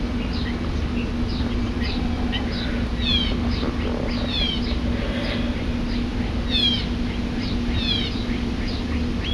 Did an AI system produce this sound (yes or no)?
no